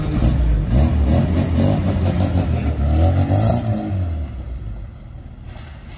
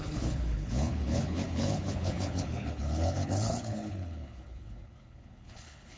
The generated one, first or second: second